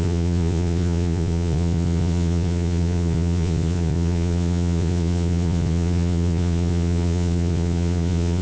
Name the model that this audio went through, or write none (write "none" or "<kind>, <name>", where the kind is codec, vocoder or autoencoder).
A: vocoder, Vocos